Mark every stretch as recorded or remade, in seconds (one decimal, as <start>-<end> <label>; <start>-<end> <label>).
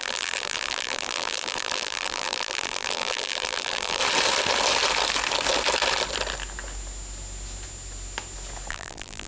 0.0-4.0 remade; 4.0-8.7 recorded; 8.7-9.3 remade